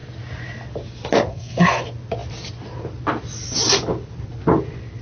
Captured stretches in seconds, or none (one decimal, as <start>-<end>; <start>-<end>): 0.0-1.3; 1.8-5.0